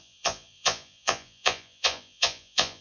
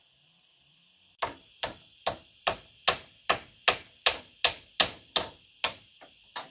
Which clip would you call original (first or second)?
second